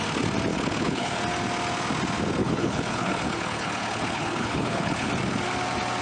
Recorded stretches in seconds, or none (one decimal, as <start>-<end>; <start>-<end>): 0.0-0.5; 1.2-2.4; 5.1-6.0